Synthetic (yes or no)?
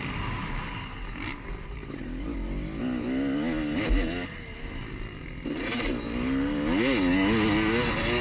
no